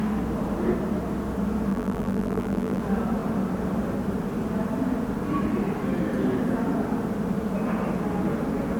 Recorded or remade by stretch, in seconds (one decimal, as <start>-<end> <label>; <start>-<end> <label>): 0.0-1.7 recorded; 1.7-2.8 remade; 2.8-8.8 recorded